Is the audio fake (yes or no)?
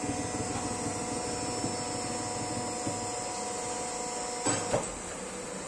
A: no